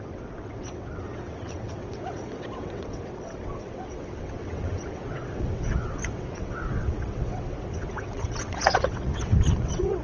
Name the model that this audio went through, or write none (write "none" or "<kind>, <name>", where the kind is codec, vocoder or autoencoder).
vocoder, WaveNeXt